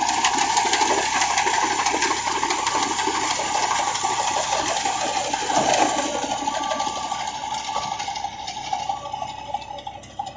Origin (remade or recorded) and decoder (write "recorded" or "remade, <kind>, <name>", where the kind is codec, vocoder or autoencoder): recorded